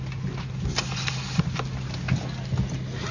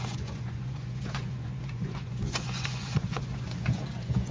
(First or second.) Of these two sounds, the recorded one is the first